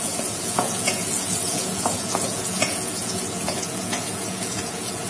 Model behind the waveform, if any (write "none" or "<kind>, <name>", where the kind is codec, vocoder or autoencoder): vocoder, Vocos